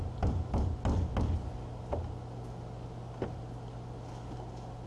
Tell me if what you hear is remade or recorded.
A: recorded